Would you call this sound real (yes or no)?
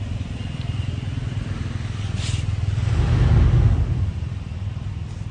yes